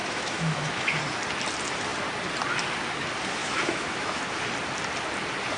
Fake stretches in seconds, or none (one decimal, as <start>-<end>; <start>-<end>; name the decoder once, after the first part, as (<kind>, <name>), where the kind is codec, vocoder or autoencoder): 0.0-1.0 (autoencoder, DAC-VAE); 3.4-4.2